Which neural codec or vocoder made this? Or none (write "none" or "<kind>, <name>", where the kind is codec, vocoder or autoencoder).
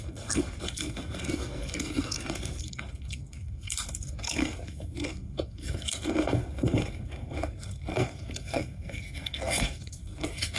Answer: codec, SNAC